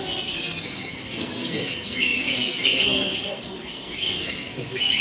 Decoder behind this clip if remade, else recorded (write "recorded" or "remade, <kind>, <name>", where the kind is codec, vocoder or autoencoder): remade, codec, SNAC